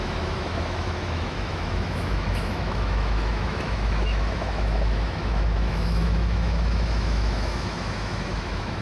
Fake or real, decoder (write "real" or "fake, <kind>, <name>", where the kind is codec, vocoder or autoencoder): fake, autoencoder, DAC-VAE